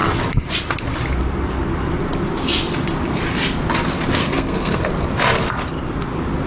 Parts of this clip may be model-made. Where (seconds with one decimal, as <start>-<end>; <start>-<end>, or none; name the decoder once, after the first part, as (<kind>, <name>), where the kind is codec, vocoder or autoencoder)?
4.2-4.9 (codec, SNAC)

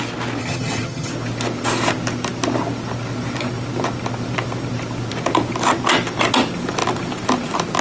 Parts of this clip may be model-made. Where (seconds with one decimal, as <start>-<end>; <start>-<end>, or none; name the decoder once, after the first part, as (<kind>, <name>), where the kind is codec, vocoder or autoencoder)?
0.4-1.1 (vocoder, HiFi-GAN)

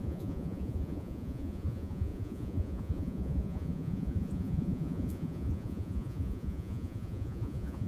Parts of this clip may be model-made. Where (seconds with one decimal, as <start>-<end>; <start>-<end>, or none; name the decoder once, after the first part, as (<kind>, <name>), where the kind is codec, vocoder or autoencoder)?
0.0-7.9 (vocoder, Vocos)

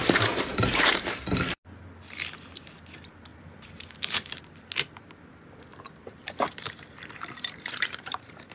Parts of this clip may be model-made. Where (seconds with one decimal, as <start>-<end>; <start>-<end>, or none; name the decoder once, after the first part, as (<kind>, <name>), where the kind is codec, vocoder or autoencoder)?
0.0-1.2 (vocoder, BigVGAN v2); 3.3-4.4; 5.7-8.5

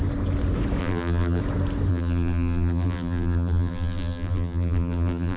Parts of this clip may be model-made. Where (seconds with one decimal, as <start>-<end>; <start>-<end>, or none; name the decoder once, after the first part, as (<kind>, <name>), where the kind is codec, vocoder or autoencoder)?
0.8-1.4 (vocoder, BigVGAN v2); 1.9-5.4

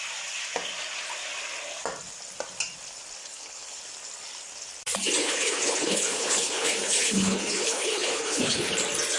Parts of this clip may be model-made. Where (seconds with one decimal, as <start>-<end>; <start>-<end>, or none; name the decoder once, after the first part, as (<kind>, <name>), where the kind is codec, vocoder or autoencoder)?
3.2-3.8 (codec, HILCodec); 5.2-8.7